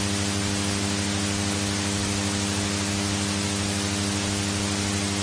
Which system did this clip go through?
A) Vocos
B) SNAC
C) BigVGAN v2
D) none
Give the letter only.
D